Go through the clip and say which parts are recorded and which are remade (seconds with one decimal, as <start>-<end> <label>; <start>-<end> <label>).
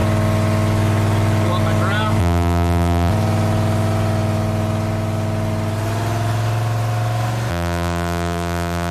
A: 0.0-2.2 recorded; 2.2-3.1 remade; 3.1-7.5 recorded; 7.5-8.9 remade